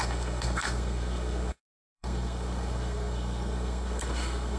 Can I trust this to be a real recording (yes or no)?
no